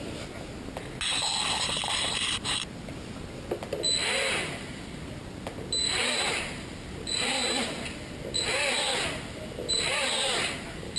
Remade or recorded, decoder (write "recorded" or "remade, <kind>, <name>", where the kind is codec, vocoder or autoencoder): recorded